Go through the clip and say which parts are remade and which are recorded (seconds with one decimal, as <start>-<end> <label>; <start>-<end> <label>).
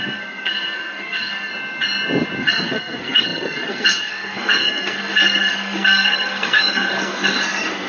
0.0-1.5 remade; 1.5-2.4 recorded; 2.4-7.9 remade